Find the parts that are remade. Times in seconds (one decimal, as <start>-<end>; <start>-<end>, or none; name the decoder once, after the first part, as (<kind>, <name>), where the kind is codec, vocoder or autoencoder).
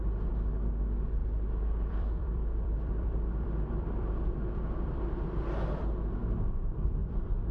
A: 1.2-5.4 (vocoder, BigVGAN v2); 7.0-7.5